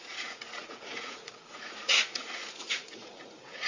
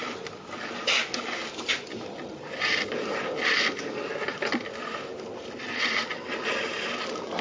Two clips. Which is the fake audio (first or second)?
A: first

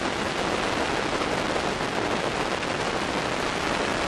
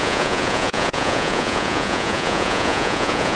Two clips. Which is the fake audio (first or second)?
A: second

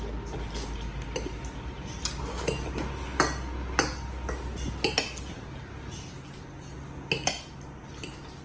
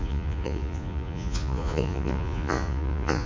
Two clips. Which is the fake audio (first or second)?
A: second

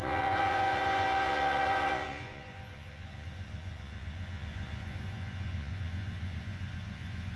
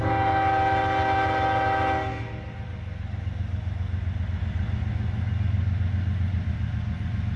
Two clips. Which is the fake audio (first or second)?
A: first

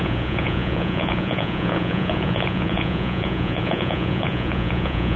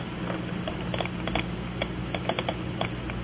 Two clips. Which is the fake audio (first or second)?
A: first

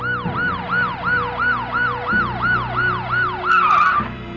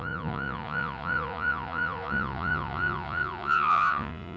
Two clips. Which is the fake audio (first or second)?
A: second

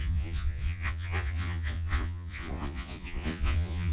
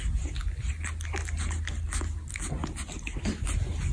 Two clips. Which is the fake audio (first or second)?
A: first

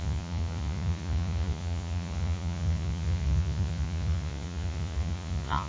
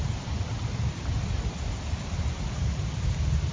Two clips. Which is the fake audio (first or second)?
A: first